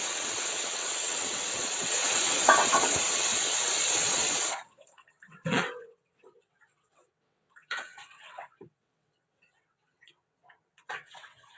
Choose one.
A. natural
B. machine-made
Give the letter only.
B